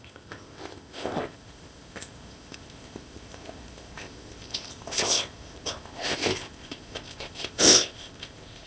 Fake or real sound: fake